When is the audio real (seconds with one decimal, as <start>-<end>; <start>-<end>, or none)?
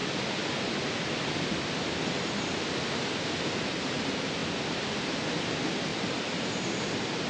0.0-5.9; 6.5-7.3